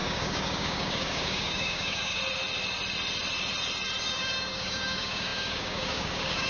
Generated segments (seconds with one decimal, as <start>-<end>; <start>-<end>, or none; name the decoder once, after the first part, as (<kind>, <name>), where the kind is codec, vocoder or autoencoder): 0.0-2.2 (codec, DAC); 4.0-6.5